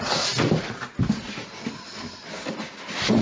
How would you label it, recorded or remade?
recorded